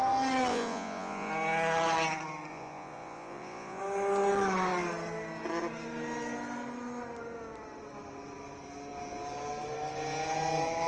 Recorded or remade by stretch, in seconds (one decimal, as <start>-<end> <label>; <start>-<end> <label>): 0.0-0.5 recorded; 0.5-1.3 remade; 1.3-2.5 recorded; 2.5-3.8 remade; 3.8-10.9 recorded